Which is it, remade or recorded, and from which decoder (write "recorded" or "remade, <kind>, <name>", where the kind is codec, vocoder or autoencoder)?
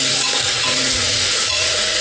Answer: remade, vocoder, Vocos